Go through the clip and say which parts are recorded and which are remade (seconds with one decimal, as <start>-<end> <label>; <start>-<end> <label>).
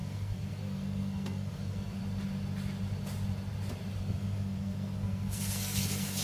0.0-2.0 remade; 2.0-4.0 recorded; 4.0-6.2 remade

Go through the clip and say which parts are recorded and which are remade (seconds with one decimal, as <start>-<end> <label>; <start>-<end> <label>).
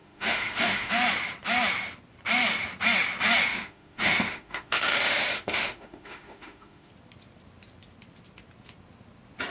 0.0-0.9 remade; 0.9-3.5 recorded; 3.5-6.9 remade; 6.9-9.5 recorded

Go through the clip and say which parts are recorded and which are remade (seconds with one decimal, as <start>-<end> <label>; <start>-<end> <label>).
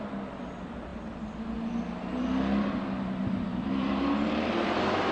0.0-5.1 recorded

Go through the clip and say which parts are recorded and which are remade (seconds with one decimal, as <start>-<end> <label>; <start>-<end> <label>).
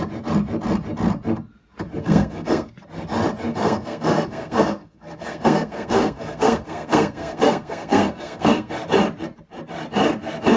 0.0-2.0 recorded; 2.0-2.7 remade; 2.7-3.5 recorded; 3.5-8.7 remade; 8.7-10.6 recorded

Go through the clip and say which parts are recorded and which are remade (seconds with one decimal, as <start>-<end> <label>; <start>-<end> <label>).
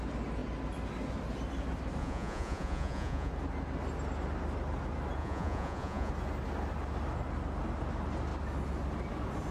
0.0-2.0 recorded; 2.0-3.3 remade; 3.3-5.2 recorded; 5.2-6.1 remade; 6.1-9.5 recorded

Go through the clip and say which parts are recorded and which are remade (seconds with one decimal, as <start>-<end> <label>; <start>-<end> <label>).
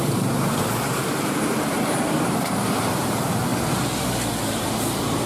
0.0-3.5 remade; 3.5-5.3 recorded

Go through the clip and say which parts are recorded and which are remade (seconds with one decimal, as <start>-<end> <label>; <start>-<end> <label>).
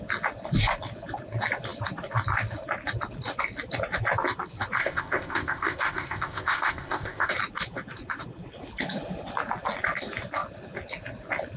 0.0-4.8 recorded; 4.8-7.3 remade; 7.3-11.6 recorded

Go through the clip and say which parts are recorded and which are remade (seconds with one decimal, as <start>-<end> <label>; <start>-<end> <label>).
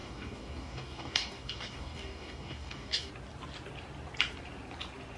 0.0-3.1 remade; 3.1-5.2 recorded